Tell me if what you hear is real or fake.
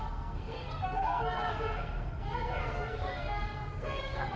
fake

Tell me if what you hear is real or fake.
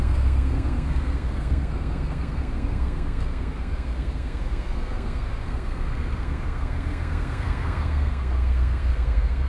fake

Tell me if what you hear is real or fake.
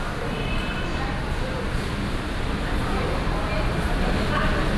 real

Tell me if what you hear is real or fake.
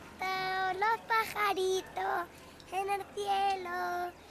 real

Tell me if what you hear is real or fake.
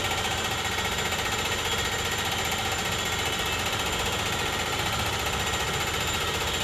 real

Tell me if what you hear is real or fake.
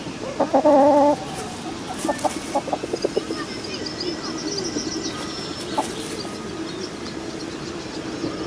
real